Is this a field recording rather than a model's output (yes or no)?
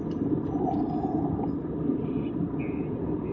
yes